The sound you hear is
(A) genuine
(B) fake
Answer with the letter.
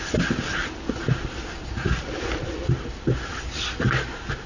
B